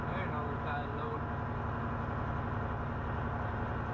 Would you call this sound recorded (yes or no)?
yes